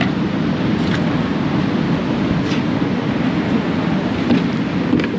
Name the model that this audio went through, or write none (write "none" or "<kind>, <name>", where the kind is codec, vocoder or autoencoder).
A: none